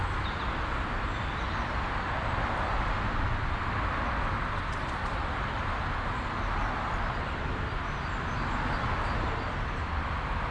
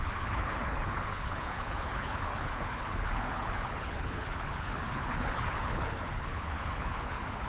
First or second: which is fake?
second